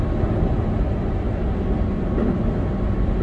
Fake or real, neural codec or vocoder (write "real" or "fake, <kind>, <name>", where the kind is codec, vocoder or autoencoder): real